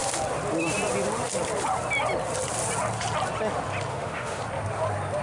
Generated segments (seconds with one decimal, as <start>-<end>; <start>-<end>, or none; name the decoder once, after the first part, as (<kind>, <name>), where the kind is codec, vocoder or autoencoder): 3.9-4.4 (autoencoder, DAC-VAE)